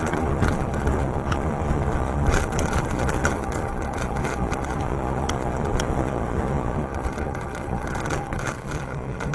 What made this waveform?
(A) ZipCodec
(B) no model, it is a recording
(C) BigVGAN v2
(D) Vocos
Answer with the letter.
D